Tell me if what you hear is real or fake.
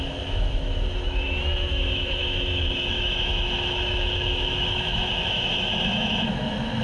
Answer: fake